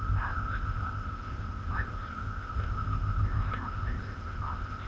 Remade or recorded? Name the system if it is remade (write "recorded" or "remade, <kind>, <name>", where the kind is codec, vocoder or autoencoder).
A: remade, codec, ZipCodec